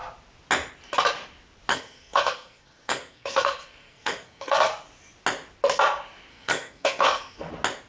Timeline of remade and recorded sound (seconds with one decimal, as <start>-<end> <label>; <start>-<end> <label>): 0.0-1.7 recorded; 1.7-4.7 remade; 4.7-6.3 recorded; 6.3-7.5 remade; 7.5-7.9 recorded